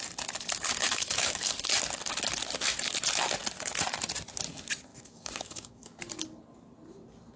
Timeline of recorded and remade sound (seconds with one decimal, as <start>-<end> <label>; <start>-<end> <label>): 0.0-0.8 recorded; 0.8-1.5 remade; 1.5-4.9 recorded; 4.9-6.0 remade; 6.0-7.4 recorded